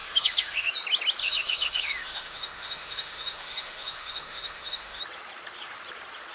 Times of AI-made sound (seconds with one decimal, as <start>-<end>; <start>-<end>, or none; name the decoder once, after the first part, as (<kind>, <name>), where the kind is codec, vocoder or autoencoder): 0.0-0.7 (autoencoder, DAC-VAE); 1.2-5.0